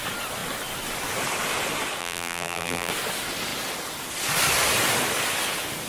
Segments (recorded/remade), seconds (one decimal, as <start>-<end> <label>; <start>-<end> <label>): 0.0-2.0 recorded; 2.0-2.9 remade; 2.9-5.9 recorded